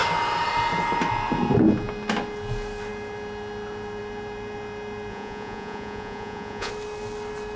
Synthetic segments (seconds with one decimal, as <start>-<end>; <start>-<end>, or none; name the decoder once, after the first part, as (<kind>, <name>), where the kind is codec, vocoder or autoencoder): 5.1-6.7 (vocoder, Vocos)